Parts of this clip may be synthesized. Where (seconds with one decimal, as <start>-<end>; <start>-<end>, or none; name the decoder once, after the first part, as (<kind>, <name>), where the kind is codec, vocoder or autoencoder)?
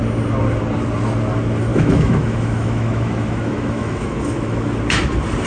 1.7-4.8 (autoencoder, DAC-VAE)